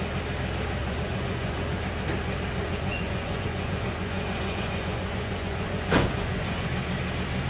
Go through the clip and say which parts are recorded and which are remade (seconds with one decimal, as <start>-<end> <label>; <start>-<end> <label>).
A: 0.0-0.8 recorded; 0.8-1.8 remade; 1.8-2.6 recorded; 2.6-6.7 remade; 6.7-7.5 recorded